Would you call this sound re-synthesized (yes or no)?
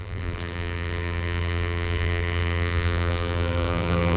yes